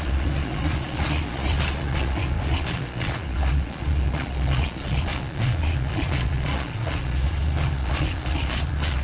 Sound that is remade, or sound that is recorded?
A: remade